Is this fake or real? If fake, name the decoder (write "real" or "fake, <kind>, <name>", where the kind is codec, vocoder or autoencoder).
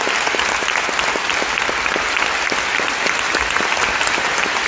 real